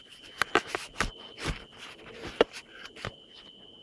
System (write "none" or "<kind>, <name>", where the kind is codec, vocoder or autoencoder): none